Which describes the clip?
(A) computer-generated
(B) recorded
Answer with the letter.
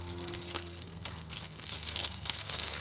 A